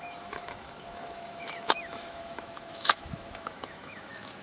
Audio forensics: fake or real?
fake